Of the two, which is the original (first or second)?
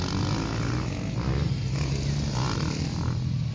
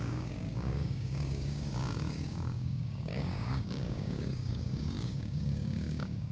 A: first